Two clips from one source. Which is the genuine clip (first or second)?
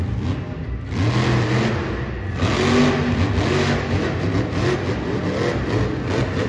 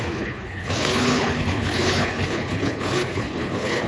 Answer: first